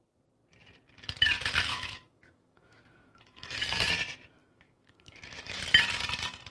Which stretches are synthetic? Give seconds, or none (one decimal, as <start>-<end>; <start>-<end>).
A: 1.7-3.9; 4.4-5.6